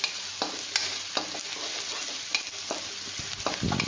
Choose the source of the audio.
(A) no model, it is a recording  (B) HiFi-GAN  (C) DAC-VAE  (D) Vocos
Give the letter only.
A